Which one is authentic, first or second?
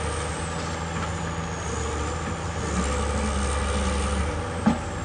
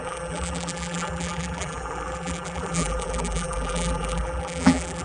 first